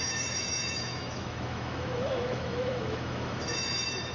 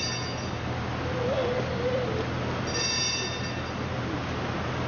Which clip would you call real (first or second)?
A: second